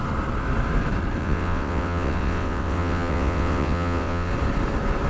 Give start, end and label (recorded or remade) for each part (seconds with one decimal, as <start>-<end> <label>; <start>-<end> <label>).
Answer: 0.0-1.2 recorded; 1.2-4.3 remade; 4.3-5.1 recorded